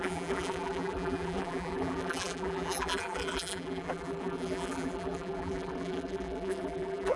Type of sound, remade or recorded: remade